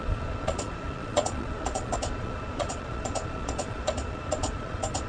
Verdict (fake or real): fake